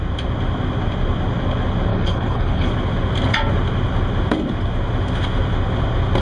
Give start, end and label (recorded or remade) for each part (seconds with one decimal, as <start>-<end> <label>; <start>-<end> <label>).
0.0-1.9 recorded; 1.9-2.7 remade; 2.7-6.2 recorded